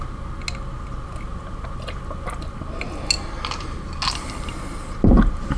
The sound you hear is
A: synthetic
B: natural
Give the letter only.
B